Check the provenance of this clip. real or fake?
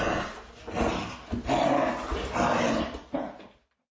real